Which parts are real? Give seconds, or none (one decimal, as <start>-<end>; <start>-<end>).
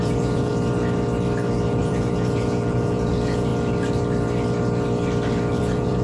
0.5-1.8; 3.5-5.6